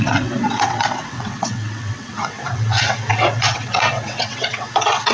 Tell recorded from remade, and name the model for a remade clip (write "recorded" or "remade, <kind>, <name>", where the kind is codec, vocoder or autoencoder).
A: remade, vocoder, WaveNeXt